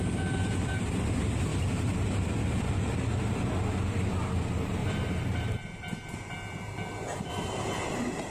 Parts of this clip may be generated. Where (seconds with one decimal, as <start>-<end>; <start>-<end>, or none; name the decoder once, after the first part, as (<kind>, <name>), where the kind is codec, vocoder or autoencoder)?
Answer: 0.0-8.3 (vocoder, BigVGAN v2)